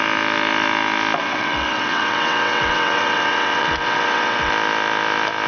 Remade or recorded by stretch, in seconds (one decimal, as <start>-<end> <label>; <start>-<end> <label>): 0.0-1.2 recorded; 1.2-4.5 remade; 4.5-5.5 recorded